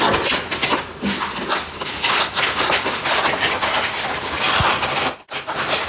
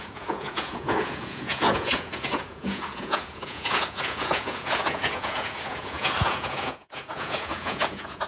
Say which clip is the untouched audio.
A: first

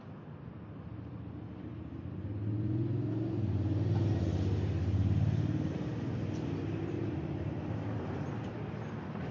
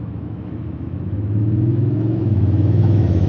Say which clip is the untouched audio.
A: first